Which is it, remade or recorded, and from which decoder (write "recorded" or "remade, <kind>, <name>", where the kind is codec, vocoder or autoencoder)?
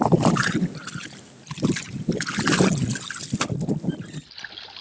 recorded